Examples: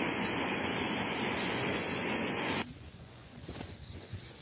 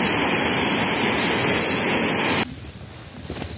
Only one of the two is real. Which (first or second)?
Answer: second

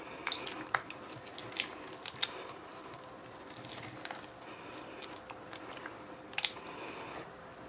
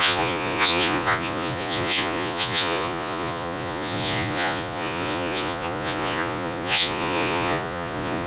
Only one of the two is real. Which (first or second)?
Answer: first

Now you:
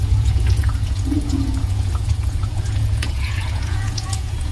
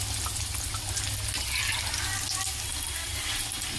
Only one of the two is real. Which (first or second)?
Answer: second